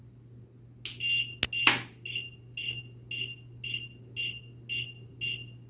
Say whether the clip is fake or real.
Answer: real